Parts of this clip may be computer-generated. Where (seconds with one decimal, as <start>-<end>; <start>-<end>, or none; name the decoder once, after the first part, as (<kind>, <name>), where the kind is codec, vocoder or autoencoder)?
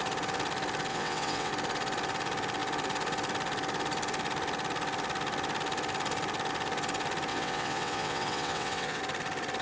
0.9-1.5 (vocoder, WaveNeXt); 7.3-9.0